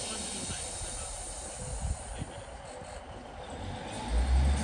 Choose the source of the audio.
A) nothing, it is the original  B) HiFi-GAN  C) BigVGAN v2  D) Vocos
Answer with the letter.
A